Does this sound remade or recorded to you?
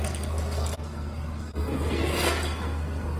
remade